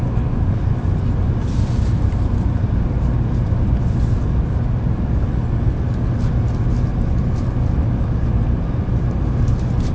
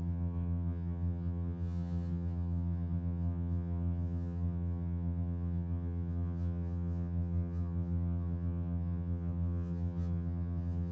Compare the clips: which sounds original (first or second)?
first